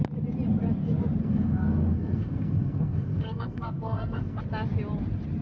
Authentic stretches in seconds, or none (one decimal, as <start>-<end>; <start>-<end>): 0.0-1.2; 4.4-5.4